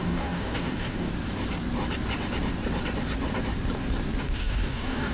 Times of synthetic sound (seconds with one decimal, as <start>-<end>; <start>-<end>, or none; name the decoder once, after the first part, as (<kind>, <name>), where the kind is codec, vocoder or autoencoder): 0.0-1.1 (codec, DAC); 4.2-5.1